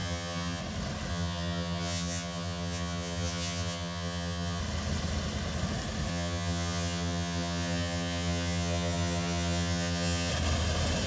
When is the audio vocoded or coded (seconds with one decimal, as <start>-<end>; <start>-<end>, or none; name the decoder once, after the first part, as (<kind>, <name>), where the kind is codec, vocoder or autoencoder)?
0.0-0.6 (vocoder, HiFi-GAN); 1.1-4.6; 6.1-10.3